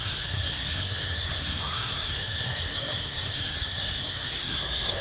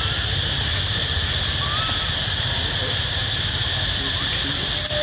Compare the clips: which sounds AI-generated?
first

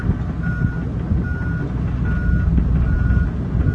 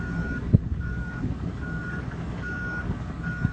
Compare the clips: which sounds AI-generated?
second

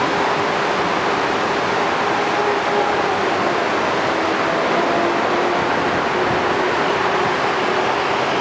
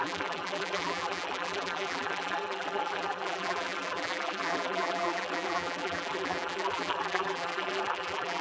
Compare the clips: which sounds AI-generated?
second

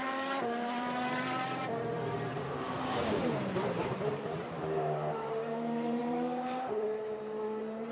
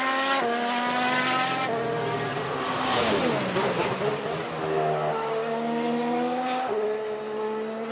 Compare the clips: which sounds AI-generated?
first